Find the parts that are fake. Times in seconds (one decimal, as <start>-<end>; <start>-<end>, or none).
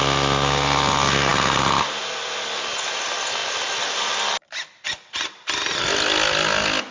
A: none